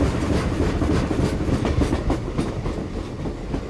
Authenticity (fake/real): real